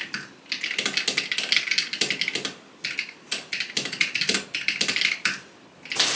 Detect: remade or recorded recorded